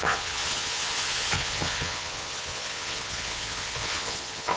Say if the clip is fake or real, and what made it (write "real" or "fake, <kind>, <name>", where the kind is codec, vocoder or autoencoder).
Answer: fake, vocoder, Vocos